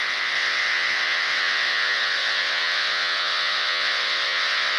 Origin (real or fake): fake